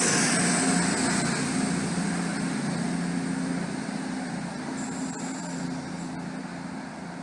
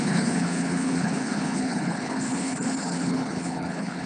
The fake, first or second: second